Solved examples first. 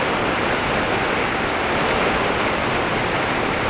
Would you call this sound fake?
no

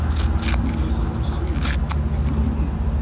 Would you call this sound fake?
no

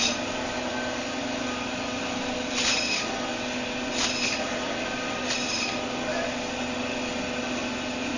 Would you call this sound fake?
no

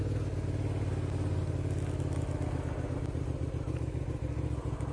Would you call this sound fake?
no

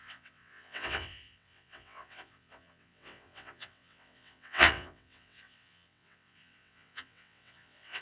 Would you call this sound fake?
yes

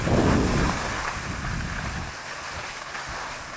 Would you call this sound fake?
no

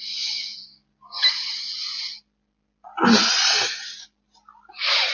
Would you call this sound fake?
no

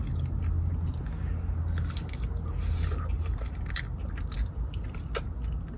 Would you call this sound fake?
no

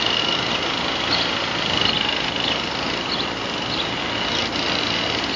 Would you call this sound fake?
no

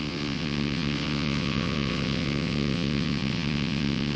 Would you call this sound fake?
yes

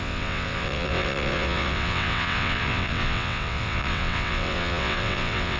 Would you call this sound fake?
yes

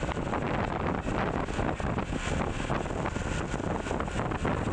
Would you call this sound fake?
no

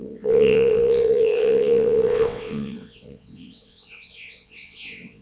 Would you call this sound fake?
yes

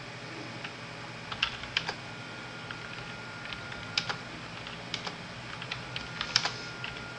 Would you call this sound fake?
no